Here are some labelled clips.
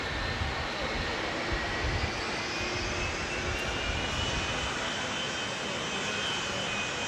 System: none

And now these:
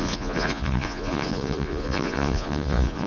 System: vocoder, Vocos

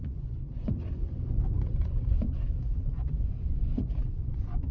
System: vocoder, Vocos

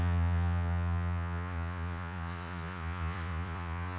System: vocoder, Vocos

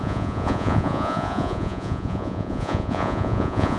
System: vocoder, Vocos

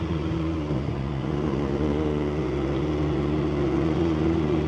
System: vocoder, Vocos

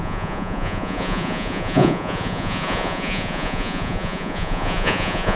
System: vocoder, Vocos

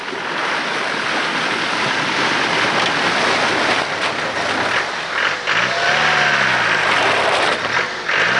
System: none